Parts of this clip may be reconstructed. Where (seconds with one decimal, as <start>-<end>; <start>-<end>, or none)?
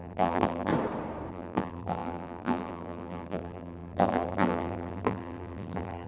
0.0-0.7; 1.3-6.1